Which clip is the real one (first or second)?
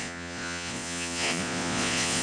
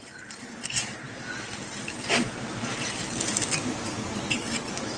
second